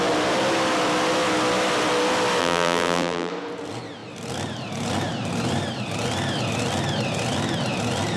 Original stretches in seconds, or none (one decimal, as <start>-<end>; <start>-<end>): 0.0-2.4; 3.3-8.2